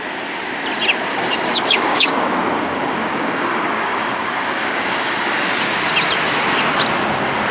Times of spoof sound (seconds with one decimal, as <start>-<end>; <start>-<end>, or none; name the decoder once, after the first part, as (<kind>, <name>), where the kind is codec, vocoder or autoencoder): 1.1-5.5 (codec, DAC)